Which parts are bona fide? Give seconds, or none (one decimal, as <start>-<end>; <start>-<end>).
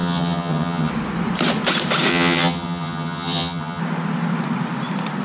0.9-2.1; 3.8-5.2